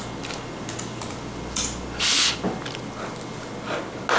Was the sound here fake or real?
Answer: real